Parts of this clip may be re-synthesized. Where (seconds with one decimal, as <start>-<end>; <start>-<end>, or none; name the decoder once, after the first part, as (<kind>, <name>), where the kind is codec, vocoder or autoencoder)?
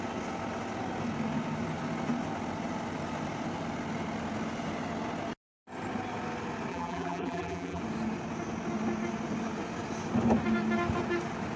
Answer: 6.7-7.8 (vocoder, BigVGAN v2)